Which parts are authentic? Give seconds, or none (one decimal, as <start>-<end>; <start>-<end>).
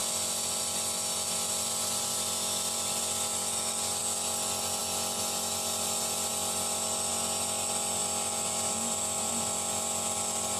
0.0-10.6